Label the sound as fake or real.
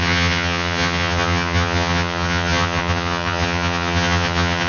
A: fake